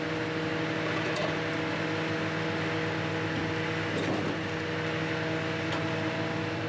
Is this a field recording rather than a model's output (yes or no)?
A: yes